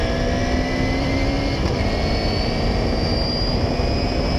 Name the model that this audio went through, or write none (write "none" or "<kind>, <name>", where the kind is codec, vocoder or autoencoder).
none